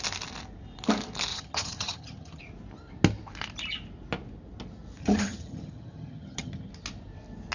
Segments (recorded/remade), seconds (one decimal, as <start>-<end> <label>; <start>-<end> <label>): 0.0-1.3 recorded; 1.3-2.4 remade; 2.4-5.0 recorded; 5.0-6.7 remade; 6.7-7.5 recorded